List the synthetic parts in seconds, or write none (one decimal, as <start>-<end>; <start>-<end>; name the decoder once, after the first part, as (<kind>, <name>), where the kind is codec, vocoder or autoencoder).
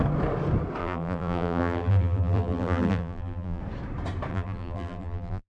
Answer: 0.8-3.6 (vocoder, BigVGAN v2); 4.3-5.5